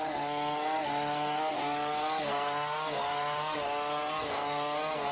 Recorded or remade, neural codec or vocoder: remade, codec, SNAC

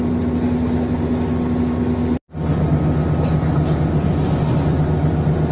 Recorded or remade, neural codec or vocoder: recorded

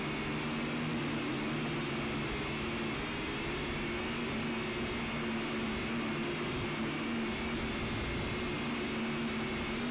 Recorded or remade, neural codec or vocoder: recorded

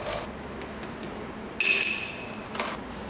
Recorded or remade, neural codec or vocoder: recorded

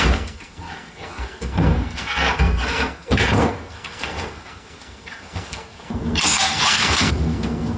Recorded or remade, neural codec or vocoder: remade, codec, SNAC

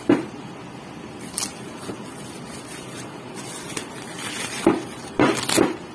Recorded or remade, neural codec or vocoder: recorded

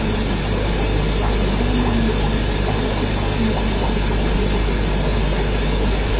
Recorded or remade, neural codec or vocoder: recorded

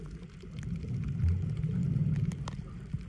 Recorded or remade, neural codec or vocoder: recorded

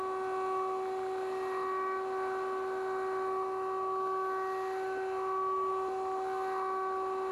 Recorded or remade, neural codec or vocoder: recorded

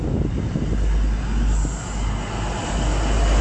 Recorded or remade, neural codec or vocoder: recorded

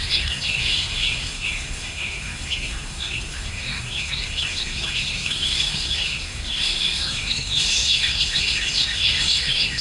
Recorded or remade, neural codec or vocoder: remade, codec, SNAC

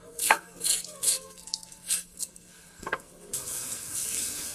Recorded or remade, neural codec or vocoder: remade, codec, SNAC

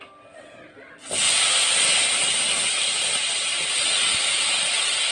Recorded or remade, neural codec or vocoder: recorded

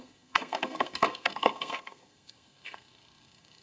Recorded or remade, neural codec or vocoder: remade, codec, SNAC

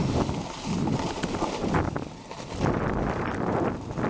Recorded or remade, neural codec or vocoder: recorded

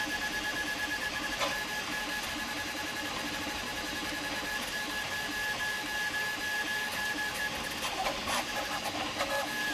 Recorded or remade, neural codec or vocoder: recorded